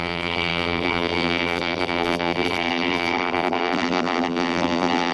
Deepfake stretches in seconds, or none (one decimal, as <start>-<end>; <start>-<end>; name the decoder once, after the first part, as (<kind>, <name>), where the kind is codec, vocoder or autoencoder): 0.0-5.1 (vocoder, BigVGAN v2)